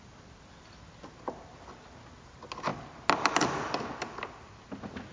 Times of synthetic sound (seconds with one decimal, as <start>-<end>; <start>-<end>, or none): none